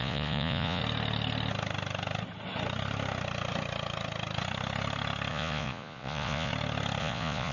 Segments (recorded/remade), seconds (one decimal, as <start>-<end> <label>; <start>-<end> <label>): 0.0-0.8 remade; 0.8-5.3 recorded; 5.3-6.5 remade; 6.5-7.0 recorded; 7.0-7.5 remade